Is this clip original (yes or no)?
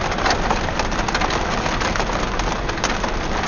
yes